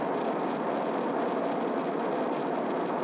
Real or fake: real